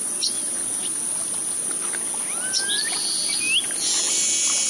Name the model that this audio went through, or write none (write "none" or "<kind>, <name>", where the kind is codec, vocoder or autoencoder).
none